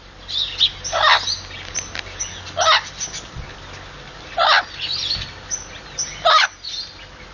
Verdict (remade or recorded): recorded